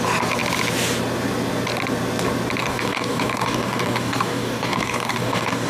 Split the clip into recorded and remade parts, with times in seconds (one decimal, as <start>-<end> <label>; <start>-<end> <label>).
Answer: 0.0-2.6 recorded; 2.6-5.7 remade